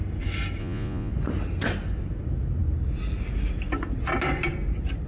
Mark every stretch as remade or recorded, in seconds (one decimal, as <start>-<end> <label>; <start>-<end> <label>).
0.0-0.6 recorded; 0.6-1.1 remade; 1.1-5.1 recorded